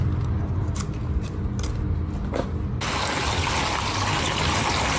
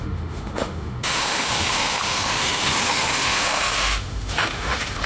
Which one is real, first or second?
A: first